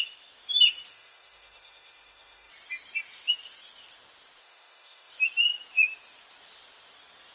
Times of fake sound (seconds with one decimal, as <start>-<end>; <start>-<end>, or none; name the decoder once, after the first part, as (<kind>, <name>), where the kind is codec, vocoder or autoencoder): 0.9-2.5 (autoencoder, DAC-VAE); 4.4-5.1